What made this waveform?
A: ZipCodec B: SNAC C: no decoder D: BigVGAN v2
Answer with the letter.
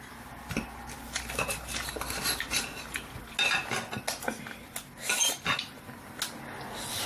C